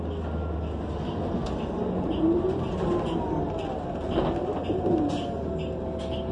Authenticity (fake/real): real